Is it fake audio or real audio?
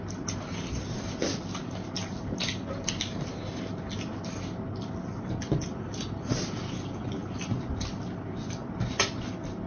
real